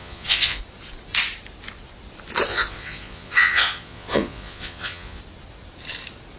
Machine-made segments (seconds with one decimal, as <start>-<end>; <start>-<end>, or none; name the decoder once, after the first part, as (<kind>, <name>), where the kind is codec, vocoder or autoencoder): 0.0-0.6 (vocoder, Vocos); 2.5-5.2